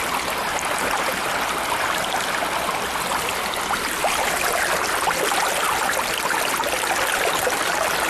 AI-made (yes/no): no